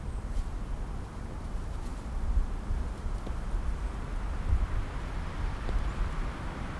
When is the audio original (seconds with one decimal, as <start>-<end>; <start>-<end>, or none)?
0.0-6.8